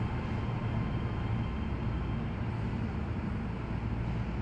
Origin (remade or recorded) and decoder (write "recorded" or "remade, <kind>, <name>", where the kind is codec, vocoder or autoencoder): recorded